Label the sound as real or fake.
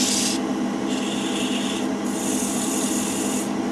real